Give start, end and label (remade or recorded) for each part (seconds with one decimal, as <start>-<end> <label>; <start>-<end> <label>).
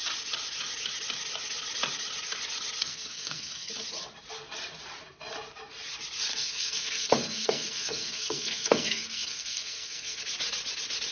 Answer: 0.0-2.8 recorded; 2.8-3.7 remade; 3.7-6.3 recorded; 6.3-10.2 remade; 10.2-11.1 recorded